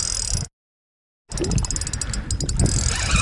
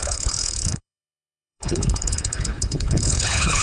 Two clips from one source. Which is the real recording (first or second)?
first